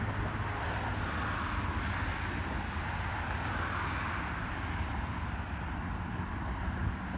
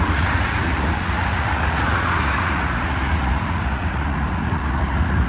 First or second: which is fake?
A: second